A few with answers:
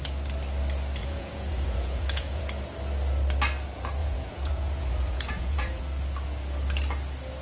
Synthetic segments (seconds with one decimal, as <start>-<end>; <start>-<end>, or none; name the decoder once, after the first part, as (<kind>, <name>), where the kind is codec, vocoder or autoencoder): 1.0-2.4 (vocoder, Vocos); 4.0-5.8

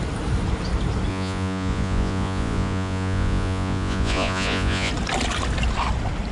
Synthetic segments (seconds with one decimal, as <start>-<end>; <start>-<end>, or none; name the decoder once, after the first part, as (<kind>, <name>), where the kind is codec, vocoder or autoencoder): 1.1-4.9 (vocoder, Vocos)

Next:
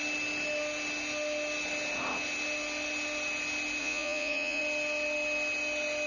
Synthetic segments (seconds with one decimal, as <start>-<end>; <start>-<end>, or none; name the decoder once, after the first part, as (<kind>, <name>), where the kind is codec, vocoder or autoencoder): 3.8-4.6 (vocoder, Vocos)

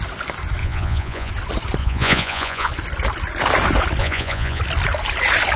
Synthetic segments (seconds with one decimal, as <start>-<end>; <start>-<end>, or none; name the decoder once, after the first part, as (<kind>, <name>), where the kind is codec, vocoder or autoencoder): 0.6-1.3 (vocoder, Vocos); 1.8-2.7; 4.0-4.6